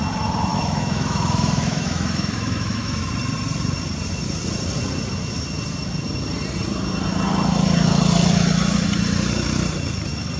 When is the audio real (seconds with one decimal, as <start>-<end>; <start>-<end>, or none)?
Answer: 0.0-0.5; 3.1-10.4